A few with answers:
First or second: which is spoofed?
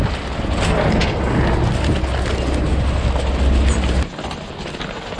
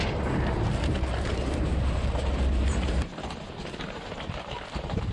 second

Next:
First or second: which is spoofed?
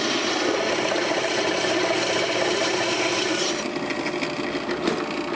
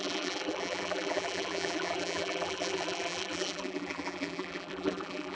second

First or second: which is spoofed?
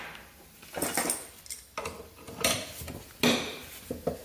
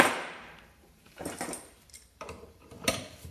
second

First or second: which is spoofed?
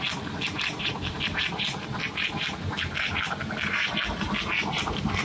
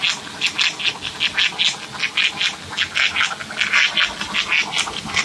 first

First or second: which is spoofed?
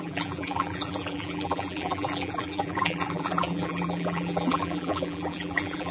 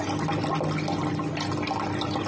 first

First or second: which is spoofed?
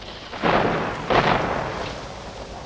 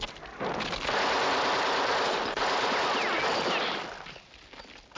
first